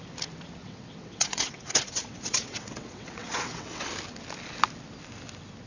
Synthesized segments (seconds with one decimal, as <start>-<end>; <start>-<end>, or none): 0.6-3.9